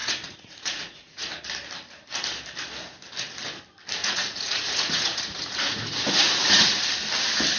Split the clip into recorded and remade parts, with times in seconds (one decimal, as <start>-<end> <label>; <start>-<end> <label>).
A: 0.0-1.3 remade; 1.3-4.0 recorded; 4.0-6.9 remade; 6.9-7.6 recorded